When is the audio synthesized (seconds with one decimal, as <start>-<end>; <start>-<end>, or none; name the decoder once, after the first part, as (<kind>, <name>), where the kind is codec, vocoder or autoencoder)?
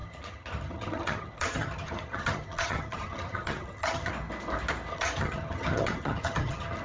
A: 0.0-4.1 (vocoder, HiFi-GAN); 4.9-6.8